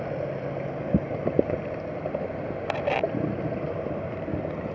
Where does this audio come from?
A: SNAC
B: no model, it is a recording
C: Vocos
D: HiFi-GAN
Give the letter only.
B